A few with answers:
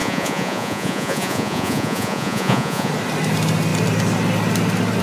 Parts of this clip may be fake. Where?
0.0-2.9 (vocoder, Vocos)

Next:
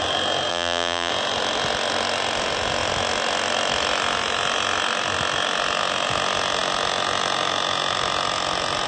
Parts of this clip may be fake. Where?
0.5-1.1 (vocoder, BigVGAN v2)

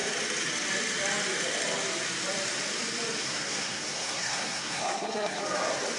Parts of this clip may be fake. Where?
3.2-5.4 (codec, SNAC)

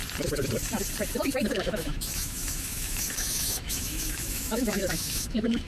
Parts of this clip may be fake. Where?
1.5-5.7 (autoencoder, DAC-VAE)

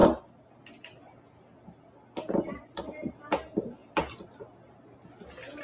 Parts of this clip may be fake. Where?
none